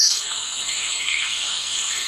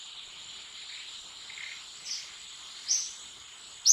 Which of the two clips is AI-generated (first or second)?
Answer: first